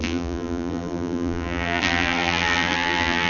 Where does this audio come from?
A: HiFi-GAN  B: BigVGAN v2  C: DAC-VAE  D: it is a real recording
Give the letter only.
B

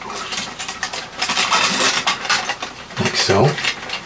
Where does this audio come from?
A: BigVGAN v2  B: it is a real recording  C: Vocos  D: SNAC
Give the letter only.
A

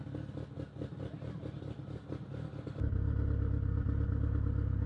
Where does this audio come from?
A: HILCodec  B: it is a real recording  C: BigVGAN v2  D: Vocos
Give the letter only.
B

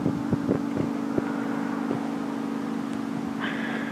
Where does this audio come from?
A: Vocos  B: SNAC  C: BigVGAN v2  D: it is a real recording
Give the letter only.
D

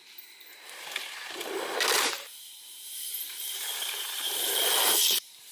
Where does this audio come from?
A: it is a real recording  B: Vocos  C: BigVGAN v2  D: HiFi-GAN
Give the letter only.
C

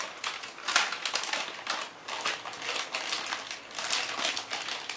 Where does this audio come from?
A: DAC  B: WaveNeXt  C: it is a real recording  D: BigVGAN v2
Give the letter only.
C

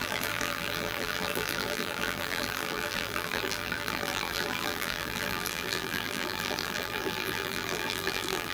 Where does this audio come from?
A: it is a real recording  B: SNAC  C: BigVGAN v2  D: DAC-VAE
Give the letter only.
C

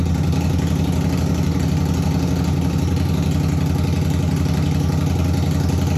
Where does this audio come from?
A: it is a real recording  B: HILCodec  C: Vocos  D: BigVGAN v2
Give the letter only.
A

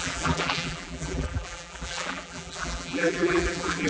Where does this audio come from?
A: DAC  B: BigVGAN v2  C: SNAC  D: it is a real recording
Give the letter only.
B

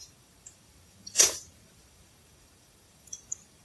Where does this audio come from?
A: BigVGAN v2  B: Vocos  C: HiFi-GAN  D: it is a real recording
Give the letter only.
A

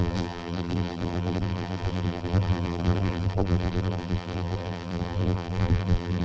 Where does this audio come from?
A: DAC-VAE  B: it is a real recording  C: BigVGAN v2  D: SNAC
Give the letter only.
C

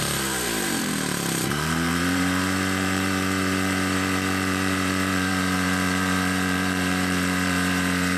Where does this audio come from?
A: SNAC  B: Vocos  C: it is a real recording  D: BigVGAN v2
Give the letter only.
D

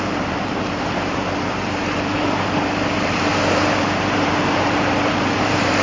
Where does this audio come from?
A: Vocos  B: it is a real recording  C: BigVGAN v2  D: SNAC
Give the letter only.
C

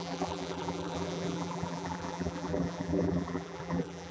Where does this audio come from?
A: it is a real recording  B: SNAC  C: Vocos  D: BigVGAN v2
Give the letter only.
D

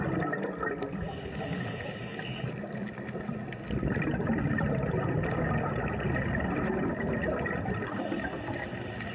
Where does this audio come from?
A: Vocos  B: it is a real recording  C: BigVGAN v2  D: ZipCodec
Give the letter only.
B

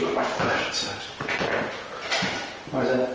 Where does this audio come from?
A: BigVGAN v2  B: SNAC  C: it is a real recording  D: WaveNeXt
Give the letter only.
A